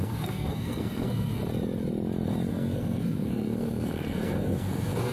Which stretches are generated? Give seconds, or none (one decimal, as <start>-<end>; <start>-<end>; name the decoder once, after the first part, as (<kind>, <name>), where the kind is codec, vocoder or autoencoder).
0.0-1.4 (codec, SNAC); 2.5-5.1